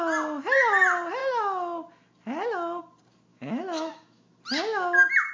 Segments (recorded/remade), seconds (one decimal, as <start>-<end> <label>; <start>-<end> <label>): 0.0-3.3 recorded; 3.3-4.4 remade; 4.4-5.3 recorded